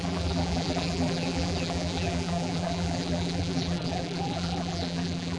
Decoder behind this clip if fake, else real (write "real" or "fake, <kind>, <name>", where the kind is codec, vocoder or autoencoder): fake, vocoder, BigVGAN v2